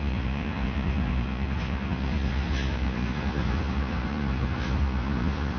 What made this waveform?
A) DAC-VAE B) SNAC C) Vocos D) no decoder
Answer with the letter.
C